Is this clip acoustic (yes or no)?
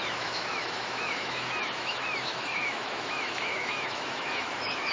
no